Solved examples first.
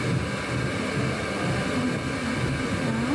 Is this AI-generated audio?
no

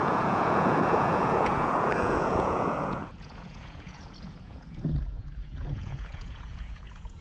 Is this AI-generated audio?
yes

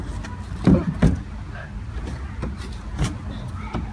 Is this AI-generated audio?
no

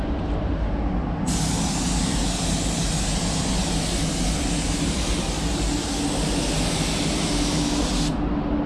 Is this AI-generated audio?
no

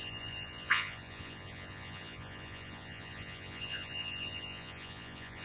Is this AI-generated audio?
yes